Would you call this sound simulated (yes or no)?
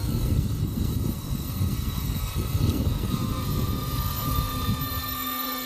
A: yes